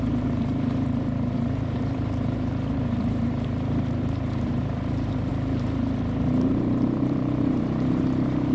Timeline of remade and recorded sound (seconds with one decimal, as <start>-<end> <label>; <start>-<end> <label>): 0.0-5.3 remade; 5.3-6.3 recorded; 6.3-8.5 remade